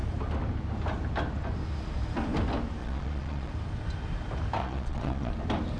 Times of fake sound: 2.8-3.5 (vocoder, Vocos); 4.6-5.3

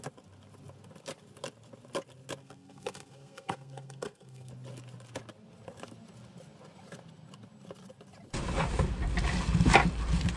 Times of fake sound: 2.4-4.5 (codec, SNAC)

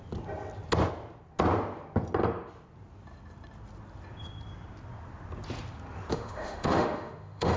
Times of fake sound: 6.1-7.6 (autoencoder, DAC-VAE)

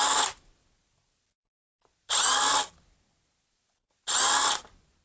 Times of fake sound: none